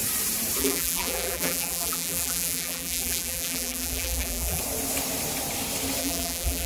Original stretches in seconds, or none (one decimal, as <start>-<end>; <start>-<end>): 0.0-0.6; 4.6-6.0